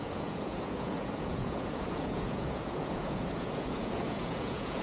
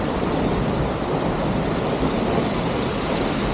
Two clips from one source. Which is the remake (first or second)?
first